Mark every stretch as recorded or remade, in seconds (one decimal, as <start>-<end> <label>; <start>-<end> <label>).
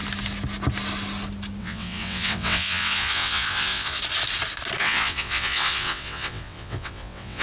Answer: 0.0-1.6 recorded; 1.6-4.0 remade; 4.0-4.8 recorded; 4.8-7.4 remade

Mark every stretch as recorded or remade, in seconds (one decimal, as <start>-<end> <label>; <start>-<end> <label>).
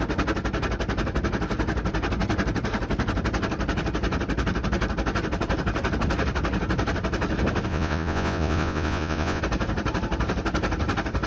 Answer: 0.0-7.7 recorded; 7.7-9.4 remade; 9.4-11.3 recorded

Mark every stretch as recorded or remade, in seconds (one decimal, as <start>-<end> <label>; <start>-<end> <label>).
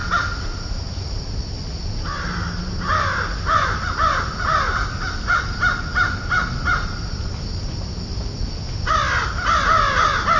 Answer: 0.0-10.4 recorded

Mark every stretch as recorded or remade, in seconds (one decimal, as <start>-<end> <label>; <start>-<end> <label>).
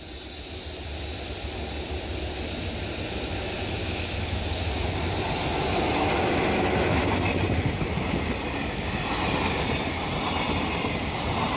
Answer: 0.0-3.8 recorded; 3.8-4.4 remade; 4.4-11.6 recorded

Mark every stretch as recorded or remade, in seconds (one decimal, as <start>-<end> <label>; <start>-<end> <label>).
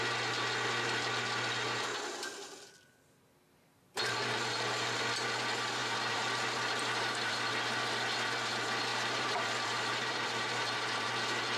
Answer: 0.0-5.8 recorded; 5.8-7.5 remade; 7.5-8.9 recorded; 8.9-11.1 remade; 11.1-11.6 recorded